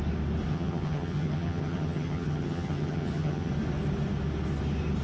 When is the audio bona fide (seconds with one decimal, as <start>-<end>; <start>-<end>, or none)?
0.0-0.5; 3.5-5.0